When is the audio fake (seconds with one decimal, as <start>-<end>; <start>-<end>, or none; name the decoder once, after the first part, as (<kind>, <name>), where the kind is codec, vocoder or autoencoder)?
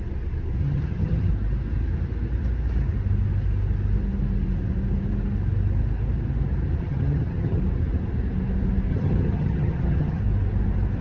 0.6-1.3 (vocoder, HiFi-GAN); 6.8-7.6; 8.9-10.2